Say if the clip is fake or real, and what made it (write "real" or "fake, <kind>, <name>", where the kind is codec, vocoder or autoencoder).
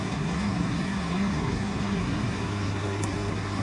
fake, codec, SNAC